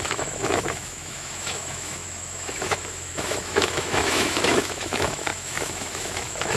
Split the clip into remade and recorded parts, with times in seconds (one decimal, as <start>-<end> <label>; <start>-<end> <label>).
0.0-6.6 remade